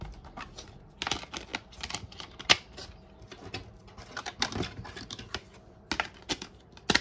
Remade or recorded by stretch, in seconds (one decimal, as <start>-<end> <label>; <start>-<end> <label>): 0.0-7.0 recorded